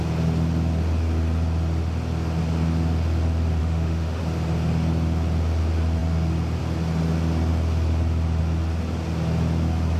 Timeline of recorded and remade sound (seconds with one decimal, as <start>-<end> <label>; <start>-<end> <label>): 0.0-3.6 recorded; 3.6-4.2 remade; 4.2-10.0 recorded